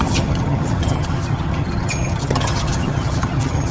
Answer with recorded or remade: remade